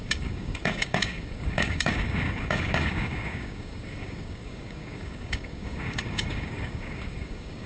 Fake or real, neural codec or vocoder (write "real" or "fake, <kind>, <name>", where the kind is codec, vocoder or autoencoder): fake, codec, DAC